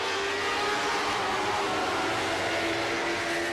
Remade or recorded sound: recorded